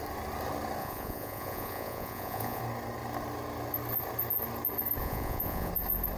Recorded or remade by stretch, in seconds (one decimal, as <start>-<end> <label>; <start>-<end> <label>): 0.0-0.8 recorded; 0.8-2.6 remade; 2.6-5.0 recorded; 5.0-5.7 remade; 5.7-6.2 recorded